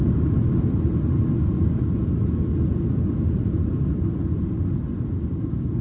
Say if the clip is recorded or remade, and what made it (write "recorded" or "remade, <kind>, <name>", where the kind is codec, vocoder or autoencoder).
recorded